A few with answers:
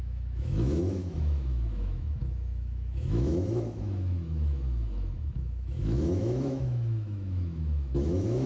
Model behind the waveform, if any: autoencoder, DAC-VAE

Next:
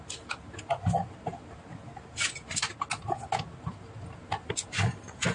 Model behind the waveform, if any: none